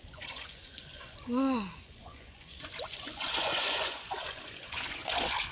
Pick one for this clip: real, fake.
fake